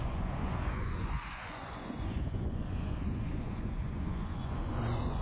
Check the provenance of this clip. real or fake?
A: fake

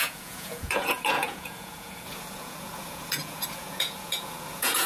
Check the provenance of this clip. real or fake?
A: fake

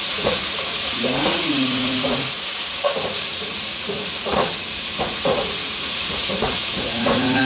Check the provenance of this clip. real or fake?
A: fake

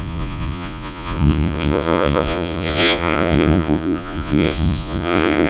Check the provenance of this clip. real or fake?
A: fake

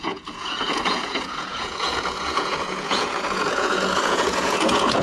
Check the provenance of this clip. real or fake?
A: fake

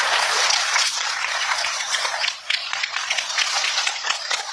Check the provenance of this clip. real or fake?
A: fake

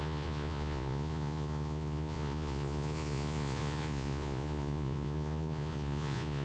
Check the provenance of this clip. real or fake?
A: fake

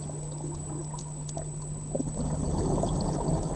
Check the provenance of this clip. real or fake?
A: real